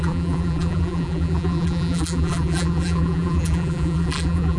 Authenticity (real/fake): fake